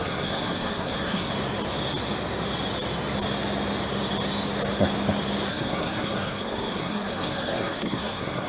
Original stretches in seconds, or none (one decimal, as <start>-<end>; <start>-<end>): 1.3-5.5